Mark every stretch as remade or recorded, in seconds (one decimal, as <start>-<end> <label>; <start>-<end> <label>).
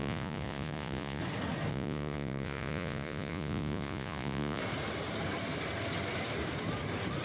0.0-1.2 remade; 1.2-1.7 recorded; 1.7-4.6 remade; 4.6-7.2 recorded